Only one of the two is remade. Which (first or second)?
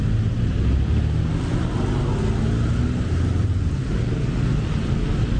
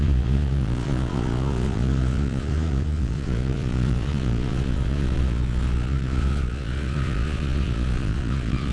second